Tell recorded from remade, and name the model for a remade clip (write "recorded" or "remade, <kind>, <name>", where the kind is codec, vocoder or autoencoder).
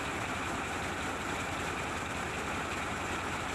recorded